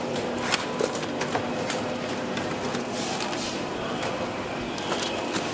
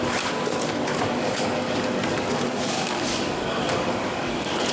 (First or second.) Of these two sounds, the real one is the first